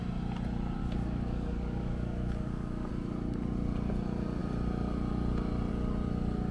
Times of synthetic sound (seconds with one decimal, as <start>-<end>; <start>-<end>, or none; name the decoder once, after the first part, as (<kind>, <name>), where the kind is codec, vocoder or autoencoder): 0.8-2.9 (codec, DAC)